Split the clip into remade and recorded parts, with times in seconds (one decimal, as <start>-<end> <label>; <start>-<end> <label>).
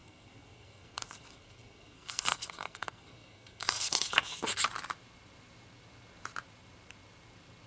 0.0-4.6 remade; 4.6-7.7 recorded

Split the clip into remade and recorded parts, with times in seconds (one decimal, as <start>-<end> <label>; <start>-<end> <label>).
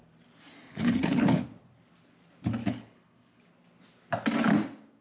0.0-0.7 recorded; 0.7-1.4 remade; 1.4-2.6 recorded; 2.6-3.4 remade; 3.4-5.0 recorded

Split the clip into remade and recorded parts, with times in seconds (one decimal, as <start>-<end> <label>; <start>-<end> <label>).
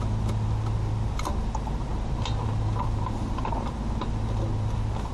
0.0-5.1 recorded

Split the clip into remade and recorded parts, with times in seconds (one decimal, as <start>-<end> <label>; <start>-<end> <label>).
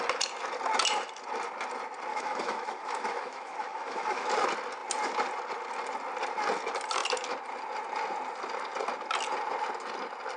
0.0-2.1 recorded; 2.1-4.3 remade; 4.3-10.4 recorded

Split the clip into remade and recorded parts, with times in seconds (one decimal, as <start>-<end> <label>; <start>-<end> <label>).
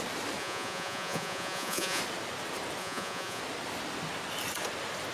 0.0-0.4 recorded; 0.4-2.0 remade; 2.0-2.8 recorded; 2.8-3.4 remade; 3.4-5.1 recorded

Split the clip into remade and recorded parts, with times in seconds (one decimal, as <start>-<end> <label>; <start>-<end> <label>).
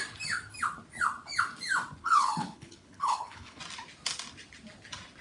0.0-2.0 recorded; 2.0-3.6 remade; 3.6-5.2 recorded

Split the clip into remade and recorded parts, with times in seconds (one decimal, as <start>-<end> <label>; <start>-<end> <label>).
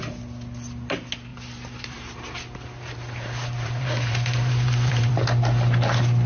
0.0-1.3 recorded; 1.3-5.1 remade; 5.1-6.3 recorded